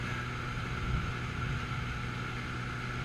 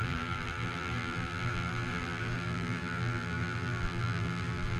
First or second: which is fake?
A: second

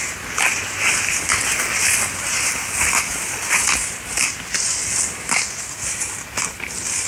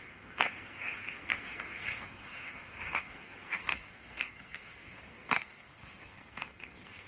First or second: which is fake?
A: second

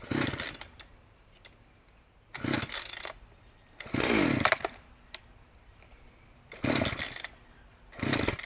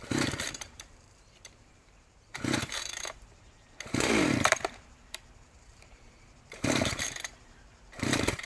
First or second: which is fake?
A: second